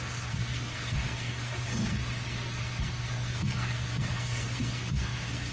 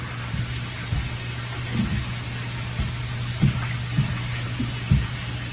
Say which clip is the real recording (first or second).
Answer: second